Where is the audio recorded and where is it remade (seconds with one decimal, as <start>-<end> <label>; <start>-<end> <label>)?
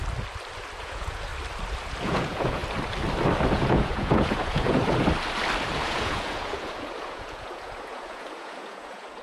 0.0-0.8 recorded; 0.8-1.3 remade; 1.3-2.0 recorded; 2.0-2.6 remade; 2.6-3.5 recorded; 3.5-4.8 remade; 4.8-5.7 recorded; 5.7-9.2 remade